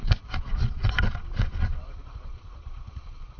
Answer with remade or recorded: remade